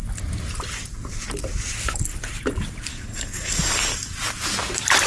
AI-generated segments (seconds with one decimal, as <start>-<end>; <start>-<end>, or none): 2.9-4.1